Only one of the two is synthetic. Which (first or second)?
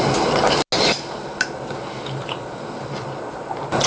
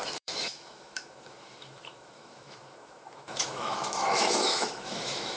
second